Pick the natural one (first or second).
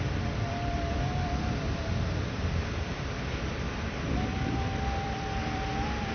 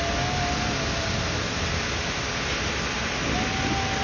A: second